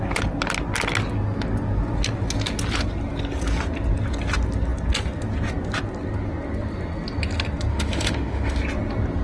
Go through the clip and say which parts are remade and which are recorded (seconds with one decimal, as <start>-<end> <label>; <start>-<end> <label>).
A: 0.0-7.7 recorded; 7.7-8.6 remade; 8.6-9.2 recorded